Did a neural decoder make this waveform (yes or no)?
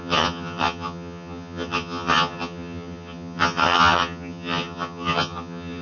yes